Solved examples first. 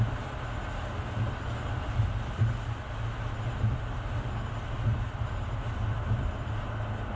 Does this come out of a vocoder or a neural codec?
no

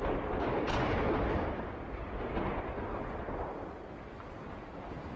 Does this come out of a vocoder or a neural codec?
no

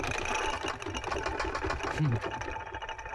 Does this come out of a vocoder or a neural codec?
no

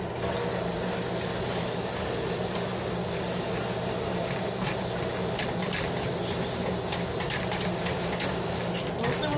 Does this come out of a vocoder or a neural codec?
no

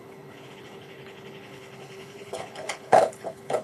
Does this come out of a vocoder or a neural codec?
yes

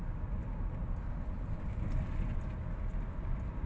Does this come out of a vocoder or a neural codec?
no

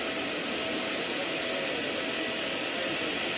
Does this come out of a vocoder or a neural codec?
no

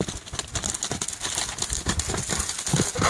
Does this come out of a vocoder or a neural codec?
no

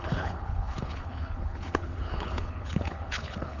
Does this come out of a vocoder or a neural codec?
yes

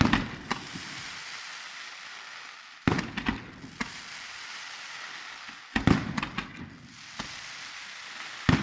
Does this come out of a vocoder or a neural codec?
no